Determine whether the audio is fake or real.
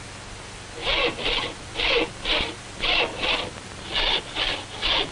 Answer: real